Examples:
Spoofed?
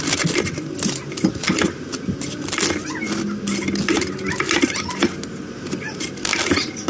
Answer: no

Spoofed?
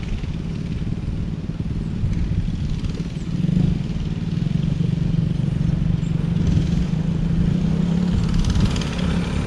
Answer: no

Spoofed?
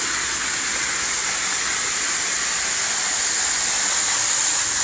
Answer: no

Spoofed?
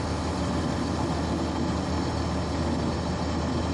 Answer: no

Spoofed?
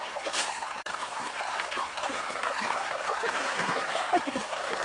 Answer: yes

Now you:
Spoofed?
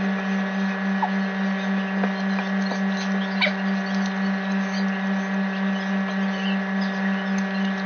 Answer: no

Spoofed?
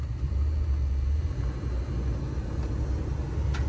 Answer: no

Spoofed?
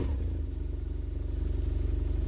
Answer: no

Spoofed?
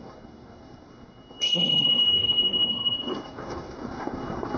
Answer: yes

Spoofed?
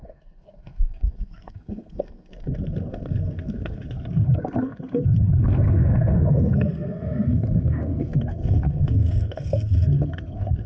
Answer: yes